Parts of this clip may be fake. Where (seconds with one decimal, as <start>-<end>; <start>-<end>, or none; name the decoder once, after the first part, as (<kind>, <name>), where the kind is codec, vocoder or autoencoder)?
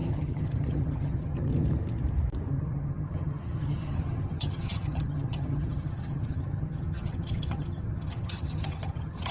0.0-1.5 (vocoder, HiFi-GAN); 2.5-9.3